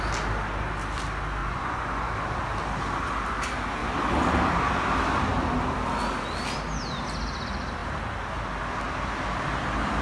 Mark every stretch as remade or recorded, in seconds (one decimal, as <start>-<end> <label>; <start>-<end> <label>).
0.0-1.4 recorded; 1.4-2.1 remade; 2.1-10.0 recorded